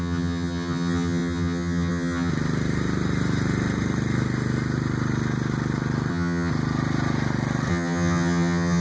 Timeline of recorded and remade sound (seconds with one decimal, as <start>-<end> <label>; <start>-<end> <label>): 0.0-2.3 remade; 2.3-6.1 recorded; 6.1-6.5 remade; 6.5-7.7 recorded; 7.7-8.8 remade